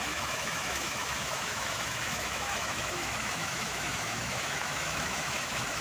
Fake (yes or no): yes